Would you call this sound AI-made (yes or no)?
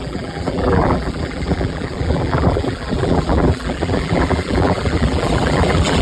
yes